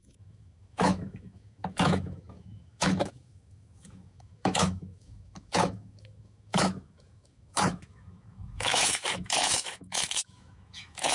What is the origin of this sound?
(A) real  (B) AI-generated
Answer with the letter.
B